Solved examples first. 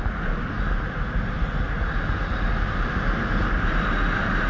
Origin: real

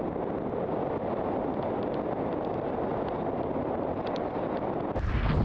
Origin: real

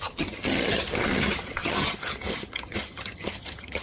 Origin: fake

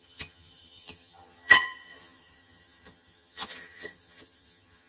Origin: fake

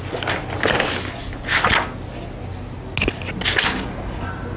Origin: real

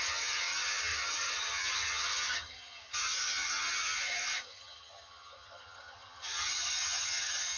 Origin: fake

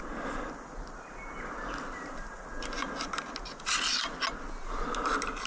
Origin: real